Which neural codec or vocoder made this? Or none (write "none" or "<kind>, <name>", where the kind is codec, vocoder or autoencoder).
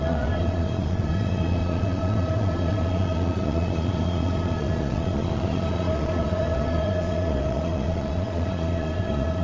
vocoder, Vocos